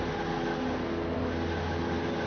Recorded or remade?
recorded